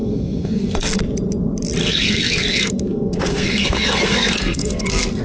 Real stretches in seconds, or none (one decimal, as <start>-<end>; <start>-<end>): 1.0-1.8